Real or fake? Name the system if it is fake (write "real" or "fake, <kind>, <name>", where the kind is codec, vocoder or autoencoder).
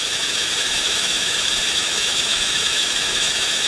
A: fake, autoencoder, DAC-VAE